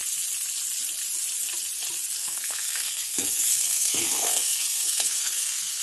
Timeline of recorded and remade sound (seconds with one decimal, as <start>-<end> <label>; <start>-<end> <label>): 0.0-2.2 recorded; 2.2-5.8 remade